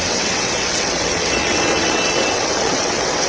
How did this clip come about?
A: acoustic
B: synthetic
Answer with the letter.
B